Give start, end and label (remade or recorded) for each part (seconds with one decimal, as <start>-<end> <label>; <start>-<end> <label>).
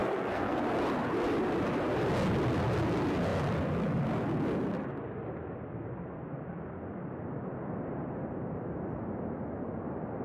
0.0-0.6 remade; 0.6-10.2 recorded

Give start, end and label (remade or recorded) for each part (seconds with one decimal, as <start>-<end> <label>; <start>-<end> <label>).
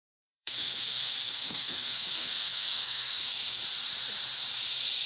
0.0-3.6 remade; 3.6-5.1 recorded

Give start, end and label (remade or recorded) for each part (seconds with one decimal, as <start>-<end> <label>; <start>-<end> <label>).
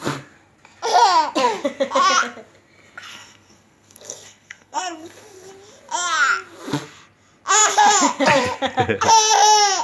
0.0-3.1 recorded; 3.1-5.5 remade; 5.5-9.8 recorded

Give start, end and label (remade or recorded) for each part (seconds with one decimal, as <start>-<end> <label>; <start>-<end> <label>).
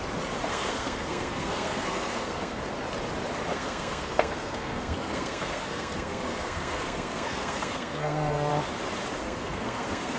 0.0-0.5 recorded; 0.5-2.6 remade; 2.6-3.5 recorded; 3.5-8.5 remade; 8.5-9.2 recorded; 9.2-10.2 remade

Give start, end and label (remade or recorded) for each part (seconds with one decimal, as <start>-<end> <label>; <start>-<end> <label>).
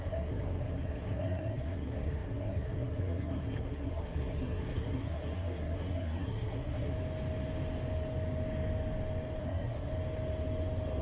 0.0-6.9 remade; 6.9-9.4 recorded; 9.4-9.9 remade; 9.9-11.0 recorded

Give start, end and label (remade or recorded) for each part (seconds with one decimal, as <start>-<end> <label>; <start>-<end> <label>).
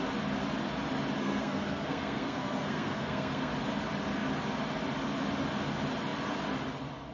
0.0-1.2 recorded; 1.2-3.5 remade; 3.5-7.1 recorded